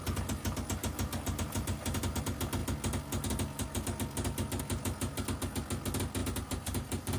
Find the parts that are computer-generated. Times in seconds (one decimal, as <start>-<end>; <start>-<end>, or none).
0.8-2.2; 6.2-7.2